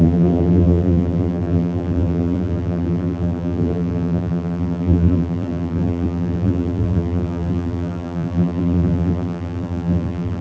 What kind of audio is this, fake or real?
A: fake